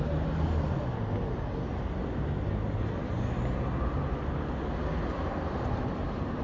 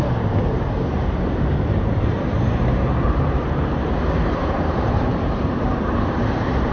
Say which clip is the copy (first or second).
second